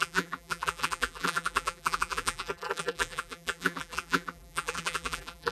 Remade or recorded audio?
remade